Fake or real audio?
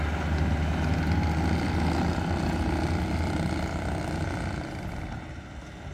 real